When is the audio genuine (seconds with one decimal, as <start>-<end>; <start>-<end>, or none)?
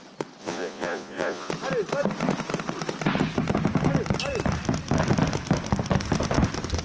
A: 0.0-0.4; 1.5-6.8